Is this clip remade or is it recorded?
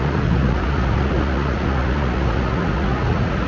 remade